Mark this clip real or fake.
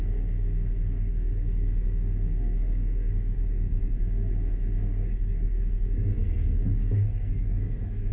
fake